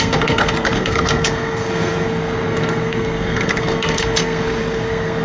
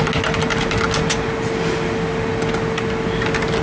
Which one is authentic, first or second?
second